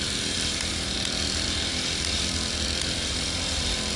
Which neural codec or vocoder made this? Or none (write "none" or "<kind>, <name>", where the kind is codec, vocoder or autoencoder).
vocoder, BigVGAN v2